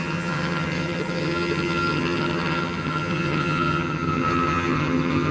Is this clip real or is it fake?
fake